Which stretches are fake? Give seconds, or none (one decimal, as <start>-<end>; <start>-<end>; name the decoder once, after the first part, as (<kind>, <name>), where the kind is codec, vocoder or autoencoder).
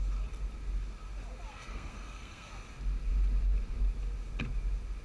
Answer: 1.5-2.5 (codec, SNAC)